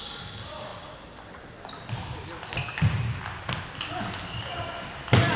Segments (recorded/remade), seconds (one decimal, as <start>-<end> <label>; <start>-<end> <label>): 0.0-5.4 recorded